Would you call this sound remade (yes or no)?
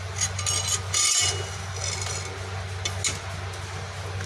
no